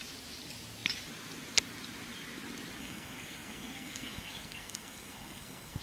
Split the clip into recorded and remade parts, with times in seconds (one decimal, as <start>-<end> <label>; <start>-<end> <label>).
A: 0.0-2.8 recorded; 2.8-5.8 remade